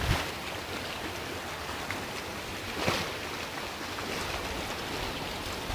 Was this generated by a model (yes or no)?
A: no